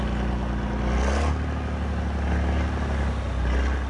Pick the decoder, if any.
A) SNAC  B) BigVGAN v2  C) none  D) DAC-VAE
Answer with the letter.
C